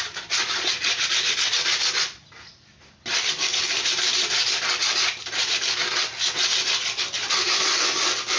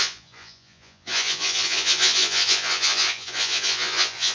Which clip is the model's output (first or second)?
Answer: second